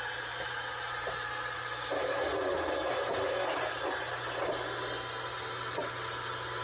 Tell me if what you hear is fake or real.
real